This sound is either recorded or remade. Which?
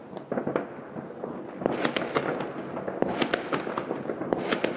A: recorded